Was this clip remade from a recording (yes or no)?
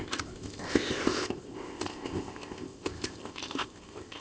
yes